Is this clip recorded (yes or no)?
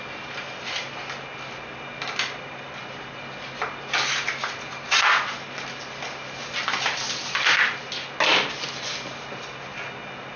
yes